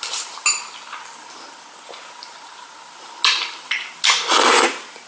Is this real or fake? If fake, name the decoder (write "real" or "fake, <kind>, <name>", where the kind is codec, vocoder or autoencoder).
real